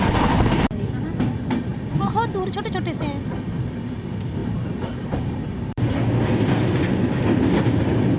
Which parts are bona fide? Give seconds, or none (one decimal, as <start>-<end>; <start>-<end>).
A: 0.0-4.4; 5.8-8.2